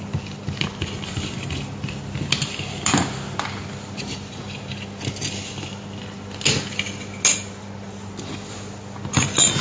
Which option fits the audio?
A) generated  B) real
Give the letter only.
B